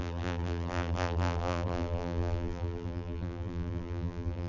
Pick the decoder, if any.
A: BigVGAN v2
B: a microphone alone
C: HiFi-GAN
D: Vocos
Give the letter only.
A